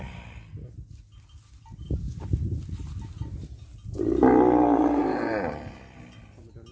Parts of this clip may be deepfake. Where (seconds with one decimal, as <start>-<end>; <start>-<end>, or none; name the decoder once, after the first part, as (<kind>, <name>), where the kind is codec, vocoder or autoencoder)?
none